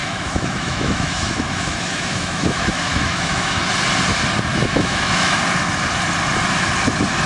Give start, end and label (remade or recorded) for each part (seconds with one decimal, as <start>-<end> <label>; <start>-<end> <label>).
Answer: 0.0-3.6 remade; 3.6-4.5 recorded; 4.5-5.4 remade; 5.4-7.3 recorded